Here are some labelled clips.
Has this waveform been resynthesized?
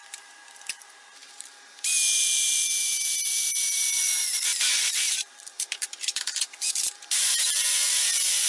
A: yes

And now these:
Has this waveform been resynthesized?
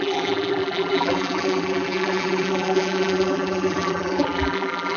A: yes